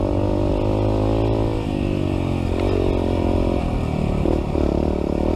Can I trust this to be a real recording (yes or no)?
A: yes